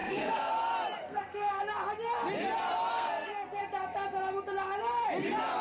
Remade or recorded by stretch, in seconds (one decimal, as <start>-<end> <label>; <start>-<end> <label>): 0.0-0.5 remade; 0.5-1.0 recorded; 1.0-1.6 remade; 1.6-2.9 recorded; 2.9-3.6 remade; 3.6-5.6 recorded